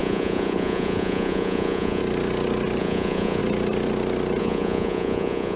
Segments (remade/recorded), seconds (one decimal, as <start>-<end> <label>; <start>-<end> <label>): 0.0-2.0 remade; 2.0-2.8 recorded; 2.8-3.4 remade; 3.4-4.4 recorded; 4.4-5.6 remade